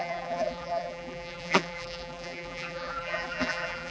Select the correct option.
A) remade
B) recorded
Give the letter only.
A